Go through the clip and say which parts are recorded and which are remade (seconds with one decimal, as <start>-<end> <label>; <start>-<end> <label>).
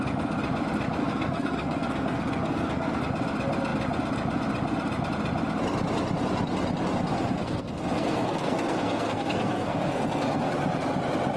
0.0-1.0 recorded; 1.0-3.0 remade; 3.0-7.1 recorded; 7.1-10.5 remade; 10.5-11.4 recorded